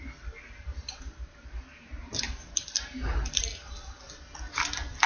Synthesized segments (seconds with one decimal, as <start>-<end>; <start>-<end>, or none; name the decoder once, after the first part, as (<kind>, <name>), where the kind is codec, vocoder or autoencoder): 0.8-3.4 (vocoder, BigVGAN v2)

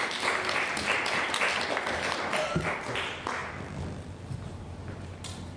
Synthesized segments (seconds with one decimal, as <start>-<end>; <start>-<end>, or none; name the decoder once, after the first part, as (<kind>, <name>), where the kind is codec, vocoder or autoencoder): none

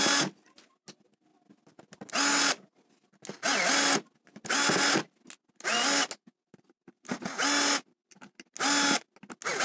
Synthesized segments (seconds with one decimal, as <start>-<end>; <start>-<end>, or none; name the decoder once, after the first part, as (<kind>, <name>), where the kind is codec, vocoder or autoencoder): none

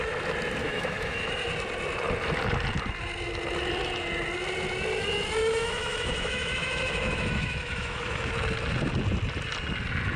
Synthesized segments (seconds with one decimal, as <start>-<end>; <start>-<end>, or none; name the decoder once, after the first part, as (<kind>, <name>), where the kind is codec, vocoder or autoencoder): 0.6-1.3 (autoencoder, DAC-VAE); 5.6-8.3

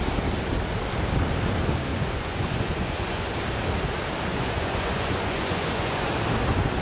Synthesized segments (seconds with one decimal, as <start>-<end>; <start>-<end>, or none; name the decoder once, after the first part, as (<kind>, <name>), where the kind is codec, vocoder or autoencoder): 1.9-3.3 (vocoder, Vocos); 4.3-6.1

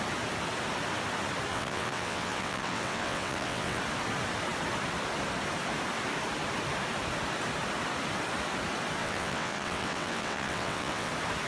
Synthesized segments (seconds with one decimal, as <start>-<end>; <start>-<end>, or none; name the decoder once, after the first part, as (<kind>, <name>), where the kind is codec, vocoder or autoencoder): 1.5-3.8 (vocoder, WaveNeXt); 9.0-11.1

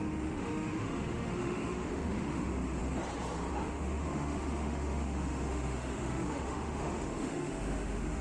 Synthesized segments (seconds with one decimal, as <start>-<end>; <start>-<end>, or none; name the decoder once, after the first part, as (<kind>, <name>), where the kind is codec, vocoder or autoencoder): 0.0-2.8 (autoencoder, DAC-VAE); 3.5-8.2

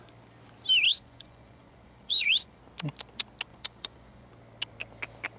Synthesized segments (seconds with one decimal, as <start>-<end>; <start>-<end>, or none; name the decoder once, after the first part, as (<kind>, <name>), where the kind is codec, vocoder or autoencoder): 0.9-2.6 (vocoder, Vocos); 3.5-4.3